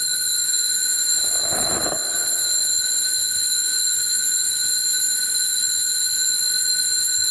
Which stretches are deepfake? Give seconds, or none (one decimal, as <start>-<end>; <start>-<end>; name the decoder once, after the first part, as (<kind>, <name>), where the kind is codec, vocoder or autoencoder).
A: none

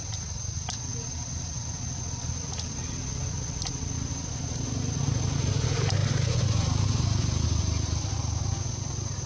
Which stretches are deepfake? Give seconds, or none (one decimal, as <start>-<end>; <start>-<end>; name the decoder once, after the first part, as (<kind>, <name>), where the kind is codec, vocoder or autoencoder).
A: none

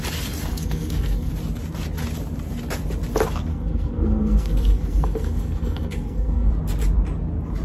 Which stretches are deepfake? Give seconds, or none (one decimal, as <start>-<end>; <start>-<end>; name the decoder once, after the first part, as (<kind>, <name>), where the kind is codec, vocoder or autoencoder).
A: 0.5-1.3 (codec, SNAC); 3.5-6.5

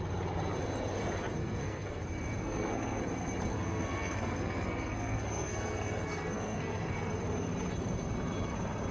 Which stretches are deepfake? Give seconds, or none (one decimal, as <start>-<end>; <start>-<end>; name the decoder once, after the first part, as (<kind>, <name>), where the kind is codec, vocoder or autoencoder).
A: 1.4-2.0 (codec, SNAC); 2.4-3.0; 3.5-7.1

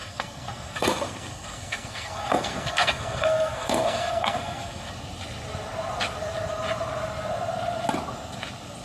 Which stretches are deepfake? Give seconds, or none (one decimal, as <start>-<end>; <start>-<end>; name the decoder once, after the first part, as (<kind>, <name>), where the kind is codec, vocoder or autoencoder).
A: 0.0-4.9 (codec, SNAC)

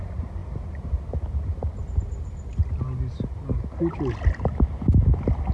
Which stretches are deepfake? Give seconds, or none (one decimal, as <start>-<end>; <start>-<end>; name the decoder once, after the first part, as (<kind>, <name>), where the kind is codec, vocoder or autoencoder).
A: none

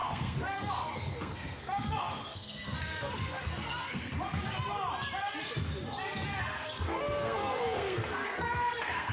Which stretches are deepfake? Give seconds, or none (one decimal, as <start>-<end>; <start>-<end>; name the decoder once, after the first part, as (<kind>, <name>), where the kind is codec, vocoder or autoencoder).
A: 0.0-4.1 (codec, SNAC); 6.3-9.1

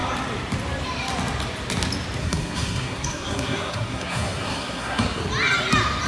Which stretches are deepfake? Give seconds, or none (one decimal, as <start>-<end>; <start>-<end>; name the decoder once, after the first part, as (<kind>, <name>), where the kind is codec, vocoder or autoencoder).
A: 2.2-5.2 (codec, SNAC)